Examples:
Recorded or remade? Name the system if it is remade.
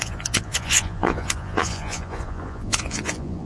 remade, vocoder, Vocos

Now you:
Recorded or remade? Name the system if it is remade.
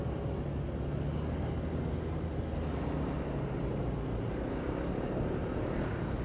recorded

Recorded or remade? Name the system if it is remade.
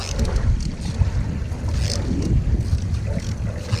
recorded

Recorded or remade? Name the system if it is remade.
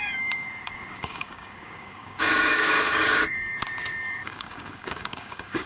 remade, codec, DAC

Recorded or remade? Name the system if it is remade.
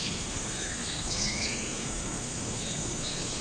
remade, codec, SNAC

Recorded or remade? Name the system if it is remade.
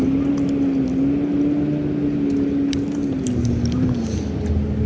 recorded